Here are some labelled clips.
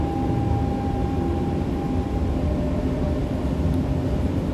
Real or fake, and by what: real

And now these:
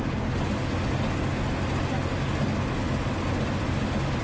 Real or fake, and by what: real